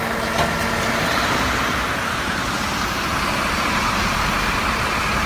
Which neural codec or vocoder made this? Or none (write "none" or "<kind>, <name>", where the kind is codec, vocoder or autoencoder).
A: none